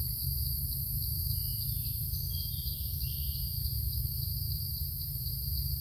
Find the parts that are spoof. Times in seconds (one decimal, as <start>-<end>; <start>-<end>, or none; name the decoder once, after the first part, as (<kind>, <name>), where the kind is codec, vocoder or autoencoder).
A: none